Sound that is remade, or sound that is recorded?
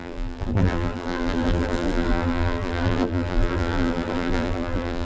remade